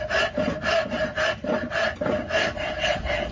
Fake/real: real